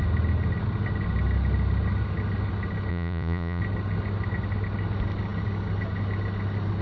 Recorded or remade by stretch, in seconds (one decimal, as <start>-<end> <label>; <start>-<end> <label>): 0.0-2.9 recorded; 2.9-3.6 remade; 3.6-6.8 recorded